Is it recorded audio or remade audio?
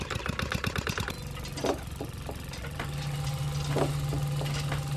recorded